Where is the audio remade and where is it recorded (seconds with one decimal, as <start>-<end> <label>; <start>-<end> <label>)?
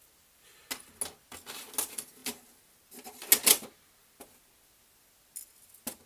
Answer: 0.0-6.1 recorded